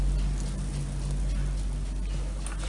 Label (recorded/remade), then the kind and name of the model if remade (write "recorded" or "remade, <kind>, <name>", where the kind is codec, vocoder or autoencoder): recorded